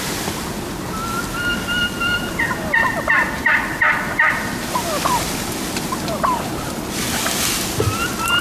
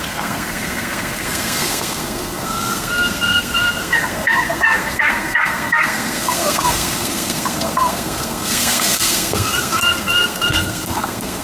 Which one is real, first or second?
first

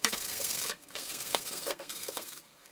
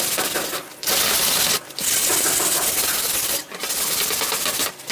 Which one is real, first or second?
second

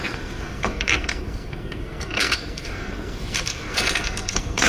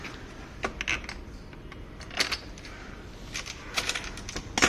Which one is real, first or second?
second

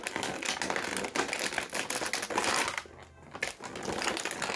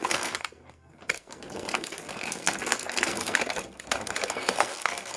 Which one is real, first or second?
first